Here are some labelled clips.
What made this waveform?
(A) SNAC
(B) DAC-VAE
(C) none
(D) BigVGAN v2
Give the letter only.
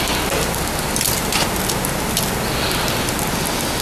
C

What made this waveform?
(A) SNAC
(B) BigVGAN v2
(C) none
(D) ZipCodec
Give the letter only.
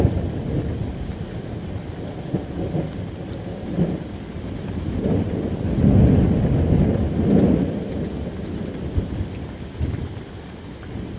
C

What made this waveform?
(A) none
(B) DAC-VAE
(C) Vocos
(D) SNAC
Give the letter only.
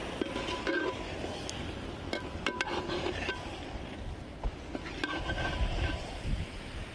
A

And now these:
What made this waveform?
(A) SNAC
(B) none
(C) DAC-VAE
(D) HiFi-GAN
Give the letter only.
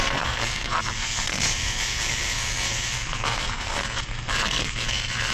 A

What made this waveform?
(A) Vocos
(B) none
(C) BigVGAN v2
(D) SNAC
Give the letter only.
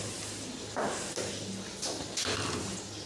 B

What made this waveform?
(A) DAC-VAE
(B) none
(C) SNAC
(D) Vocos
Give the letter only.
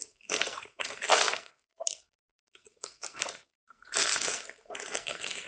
C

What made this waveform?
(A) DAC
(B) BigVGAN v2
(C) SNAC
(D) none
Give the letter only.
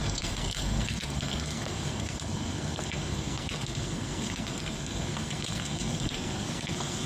C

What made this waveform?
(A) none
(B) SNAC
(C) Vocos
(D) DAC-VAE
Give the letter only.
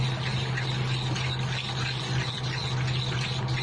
A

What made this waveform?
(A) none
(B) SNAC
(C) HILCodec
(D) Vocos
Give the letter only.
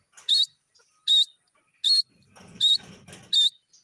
A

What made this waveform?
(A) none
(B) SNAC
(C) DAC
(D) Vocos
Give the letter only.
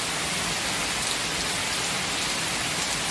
A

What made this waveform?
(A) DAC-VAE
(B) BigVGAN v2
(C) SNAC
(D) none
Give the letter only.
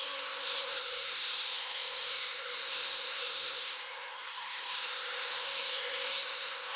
C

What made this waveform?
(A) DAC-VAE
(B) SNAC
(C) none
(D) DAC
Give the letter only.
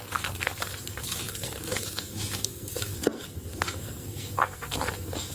B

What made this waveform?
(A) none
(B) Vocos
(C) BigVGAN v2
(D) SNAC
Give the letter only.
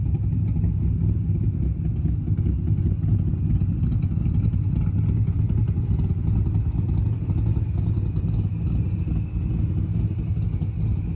A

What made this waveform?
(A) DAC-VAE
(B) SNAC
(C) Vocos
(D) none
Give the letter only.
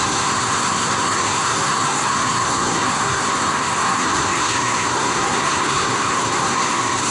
B